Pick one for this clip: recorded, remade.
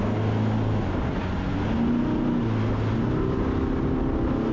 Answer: recorded